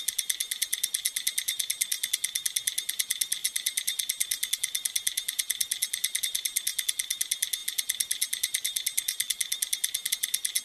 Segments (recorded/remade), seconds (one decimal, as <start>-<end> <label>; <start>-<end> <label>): 0.0-10.6 recorded